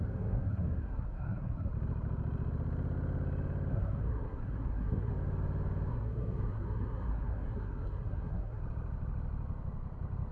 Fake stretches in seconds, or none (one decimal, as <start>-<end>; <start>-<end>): 0.0-1.7; 3.7-5.1; 5.9-8.6